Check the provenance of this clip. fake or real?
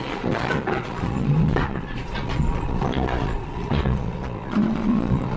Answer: fake